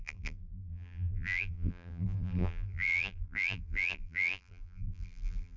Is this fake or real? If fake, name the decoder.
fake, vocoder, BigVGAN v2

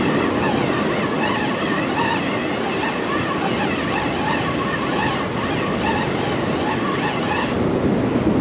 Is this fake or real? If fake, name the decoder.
real